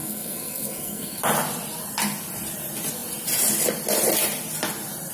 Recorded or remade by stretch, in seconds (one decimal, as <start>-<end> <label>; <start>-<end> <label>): 0.0-1.2 remade; 1.2-5.1 recorded